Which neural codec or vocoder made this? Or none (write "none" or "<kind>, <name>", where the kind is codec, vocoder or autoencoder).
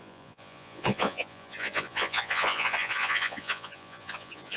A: vocoder, Vocos